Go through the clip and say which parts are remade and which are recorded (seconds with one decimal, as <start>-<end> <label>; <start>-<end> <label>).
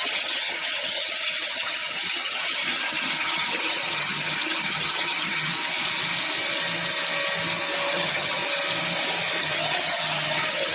0.0-5.5 remade; 5.5-7.9 recorded; 7.9-8.4 remade; 8.4-9.4 recorded; 9.4-10.7 remade